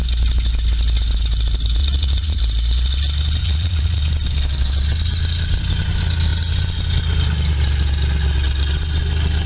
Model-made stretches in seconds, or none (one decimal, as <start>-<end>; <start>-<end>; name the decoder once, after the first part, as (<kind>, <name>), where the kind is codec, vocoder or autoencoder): 1.8-2.4 (vocoder, Vocos); 3.4-4.0